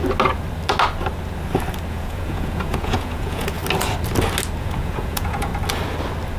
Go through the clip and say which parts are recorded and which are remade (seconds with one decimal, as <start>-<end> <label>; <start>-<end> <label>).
0.0-1.9 recorded; 1.9-3.6 remade; 3.6-4.6 recorded; 4.6-5.5 remade; 5.5-6.4 recorded